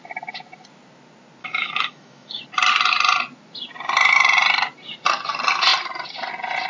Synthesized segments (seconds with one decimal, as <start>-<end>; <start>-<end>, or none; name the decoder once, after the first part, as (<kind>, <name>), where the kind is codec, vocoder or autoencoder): 1.4-2.4 (autoencoder, DAC-VAE)